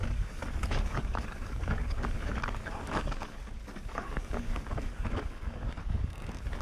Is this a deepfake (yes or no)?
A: yes